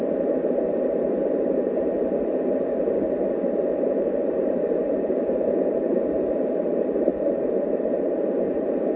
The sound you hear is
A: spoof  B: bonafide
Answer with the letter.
A